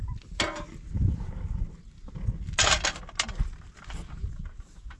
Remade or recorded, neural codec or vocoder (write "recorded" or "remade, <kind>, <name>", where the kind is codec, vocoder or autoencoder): recorded